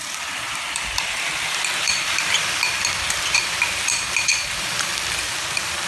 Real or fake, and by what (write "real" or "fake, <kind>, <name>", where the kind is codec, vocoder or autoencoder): fake, vocoder, BigVGAN v2